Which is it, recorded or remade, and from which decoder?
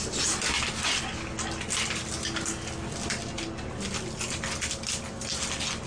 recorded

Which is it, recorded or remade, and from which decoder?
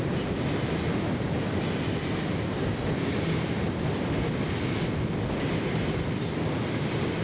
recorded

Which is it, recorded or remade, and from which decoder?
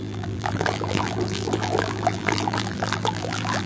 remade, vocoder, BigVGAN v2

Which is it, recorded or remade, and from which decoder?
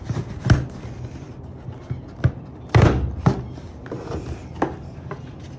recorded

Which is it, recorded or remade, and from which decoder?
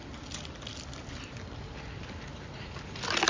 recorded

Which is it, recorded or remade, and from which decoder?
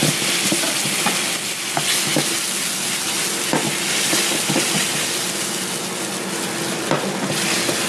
recorded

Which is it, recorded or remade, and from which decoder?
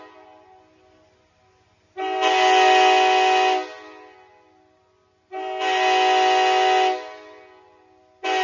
recorded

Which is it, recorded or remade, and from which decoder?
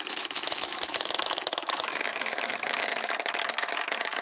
remade, autoencoder, DAC-VAE